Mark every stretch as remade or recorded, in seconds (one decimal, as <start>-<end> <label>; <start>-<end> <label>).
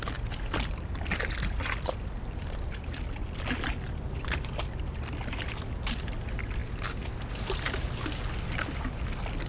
0.0-9.5 recorded